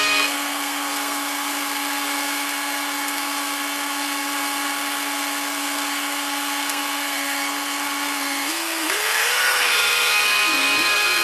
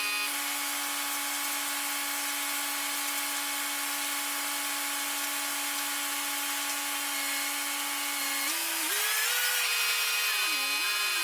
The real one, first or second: second